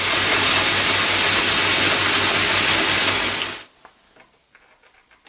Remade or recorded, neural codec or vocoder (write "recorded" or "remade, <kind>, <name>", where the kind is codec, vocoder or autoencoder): recorded